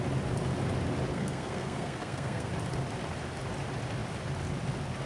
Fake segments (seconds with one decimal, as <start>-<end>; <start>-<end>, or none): 1.1-2.5